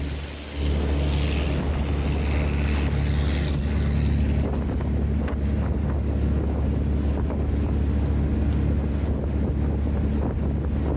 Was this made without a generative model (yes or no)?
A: yes